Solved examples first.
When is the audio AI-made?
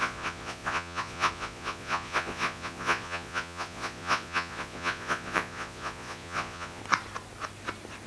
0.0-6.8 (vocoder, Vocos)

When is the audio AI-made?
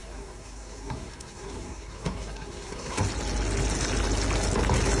0.0-3.0 (codec, SNAC)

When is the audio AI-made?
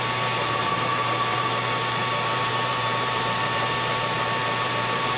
0.0-5.2 (vocoder, BigVGAN v2)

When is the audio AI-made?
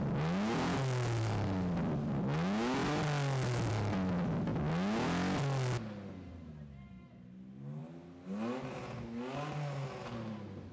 none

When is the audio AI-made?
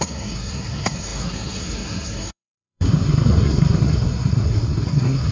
0.0-5.3 (codec, SNAC)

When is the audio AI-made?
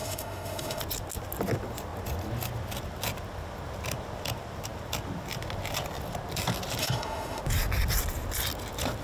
0.0-0.8 (autoencoder, DAC-VAE); 6.8-7.4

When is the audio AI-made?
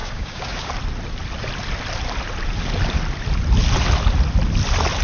0.0-0.7 (codec, DAC)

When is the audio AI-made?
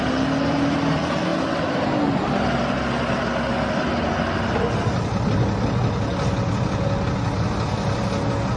none